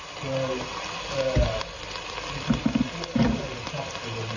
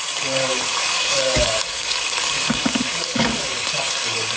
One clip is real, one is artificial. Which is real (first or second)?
first